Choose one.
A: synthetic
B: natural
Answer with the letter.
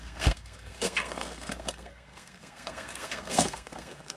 A